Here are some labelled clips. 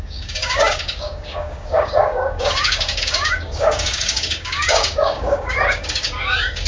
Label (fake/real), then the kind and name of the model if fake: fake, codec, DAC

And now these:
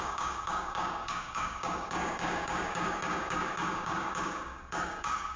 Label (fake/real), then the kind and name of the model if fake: fake, codec, DAC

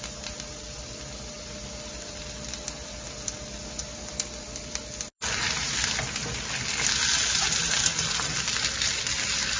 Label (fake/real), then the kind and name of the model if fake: real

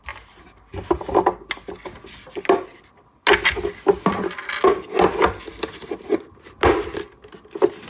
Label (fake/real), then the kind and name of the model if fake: real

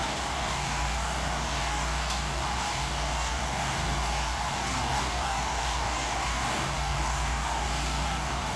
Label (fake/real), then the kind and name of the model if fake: fake, codec, DAC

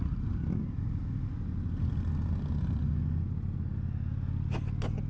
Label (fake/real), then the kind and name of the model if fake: real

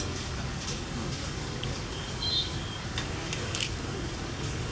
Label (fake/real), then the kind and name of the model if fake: fake, codec, DAC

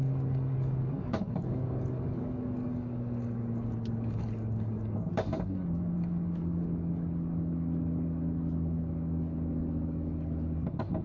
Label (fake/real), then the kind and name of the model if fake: fake, codec, DAC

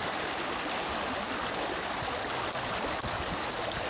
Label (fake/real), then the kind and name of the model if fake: real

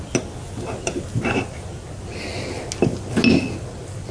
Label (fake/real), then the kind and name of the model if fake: real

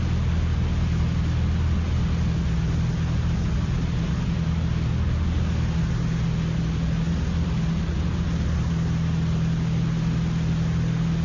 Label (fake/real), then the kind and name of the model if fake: real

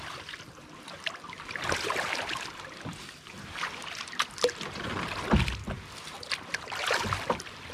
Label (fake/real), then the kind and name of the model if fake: real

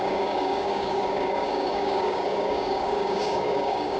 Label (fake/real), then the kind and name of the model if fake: fake, codec, DAC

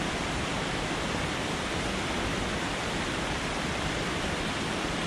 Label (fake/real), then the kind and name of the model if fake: real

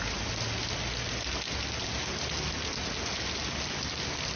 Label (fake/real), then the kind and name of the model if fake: real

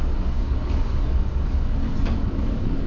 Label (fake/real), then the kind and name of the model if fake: fake, codec, DAC